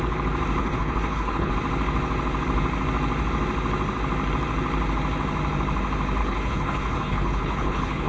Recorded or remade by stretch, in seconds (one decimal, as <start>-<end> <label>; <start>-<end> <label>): 0.0-0.6 recorded; 0.6-1.5 remade; 1.5-6.2 recorded; 6.2-8.1 remade